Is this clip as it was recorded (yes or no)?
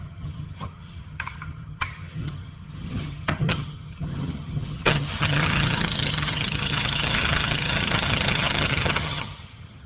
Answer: no